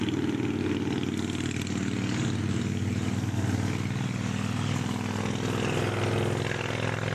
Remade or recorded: recorded